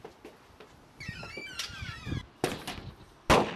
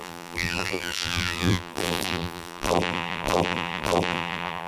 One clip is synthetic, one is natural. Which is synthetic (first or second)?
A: second